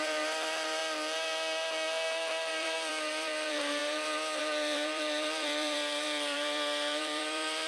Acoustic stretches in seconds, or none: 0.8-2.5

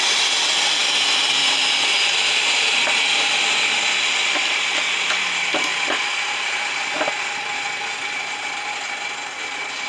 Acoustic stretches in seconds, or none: 0.0-9.9

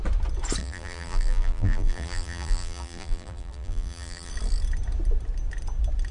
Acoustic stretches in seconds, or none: 0.0-0.6; 4.3-6.1

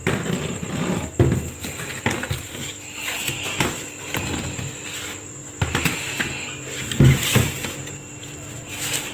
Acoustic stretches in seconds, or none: 0.0-9.1

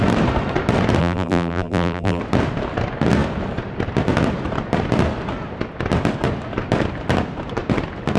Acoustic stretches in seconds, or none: 0.0-1.0; 2.2-8.2

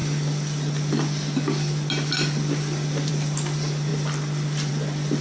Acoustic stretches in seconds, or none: 0.0-5.2

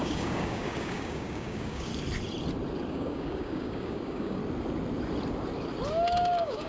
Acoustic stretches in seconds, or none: 1.9-2.9; 4.4-5.9

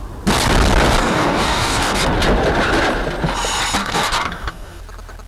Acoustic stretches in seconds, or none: 0.0-1.0; 2.0-3.8; 4.8-5.3